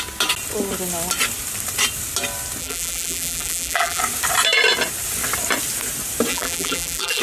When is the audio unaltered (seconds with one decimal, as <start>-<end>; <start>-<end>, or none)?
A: 0.0-2.6; 4.0-6.3